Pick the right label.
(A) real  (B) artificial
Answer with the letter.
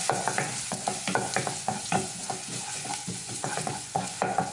B